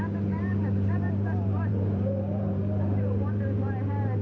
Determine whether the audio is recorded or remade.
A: remade